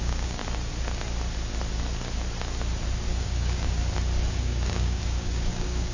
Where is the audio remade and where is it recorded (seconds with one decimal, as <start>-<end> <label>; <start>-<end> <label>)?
0.0-0.4 remade; 0.4-3.2 recorded; 3.2-3.8 remade; 3.8-4.4 recorded; 4.4-5.9 remade